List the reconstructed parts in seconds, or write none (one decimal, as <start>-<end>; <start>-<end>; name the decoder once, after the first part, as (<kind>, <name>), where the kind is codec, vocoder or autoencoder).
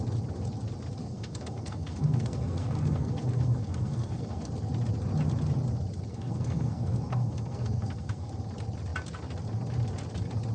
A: 1.0-4.5 (codec, SNAC); 6.1-8.3